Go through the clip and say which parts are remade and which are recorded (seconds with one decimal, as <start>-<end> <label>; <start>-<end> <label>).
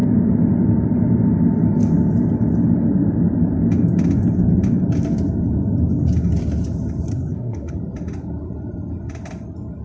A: 0.0-7.1 recorded; 7.1-7.7 remade; 7.7-9.8 recorded